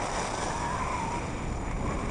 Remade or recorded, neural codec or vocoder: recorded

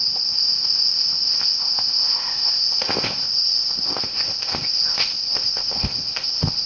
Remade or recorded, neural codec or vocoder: remade, codec, ZipCodec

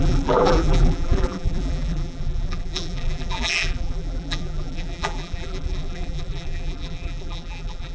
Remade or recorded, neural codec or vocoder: remade, vocoder, BigVGAN v2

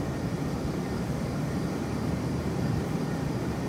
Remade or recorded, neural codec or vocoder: remade, vocoder, BigVGAN v2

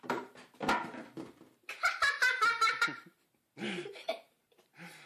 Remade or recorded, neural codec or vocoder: remade, vocoder, BigVGAN v2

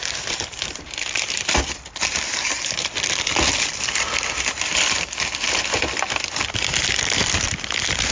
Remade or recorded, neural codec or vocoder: remade, vocoder, BigVGAN v2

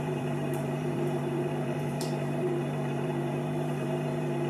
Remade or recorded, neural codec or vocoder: remade, vocoder, BigVGAN v2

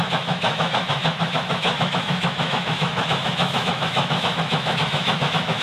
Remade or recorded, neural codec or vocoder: remade, autoencoder, DAC-VAE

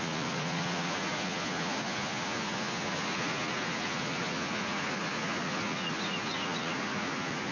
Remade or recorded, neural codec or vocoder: remade, vocoder, Vocos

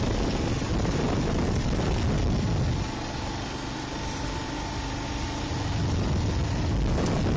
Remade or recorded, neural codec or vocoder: recorded